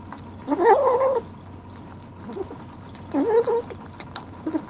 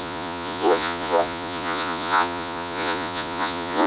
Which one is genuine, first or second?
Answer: first